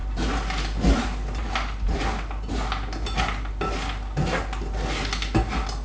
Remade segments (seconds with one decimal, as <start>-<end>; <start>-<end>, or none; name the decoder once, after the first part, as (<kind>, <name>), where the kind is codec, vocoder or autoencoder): none